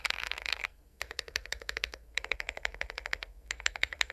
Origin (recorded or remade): remade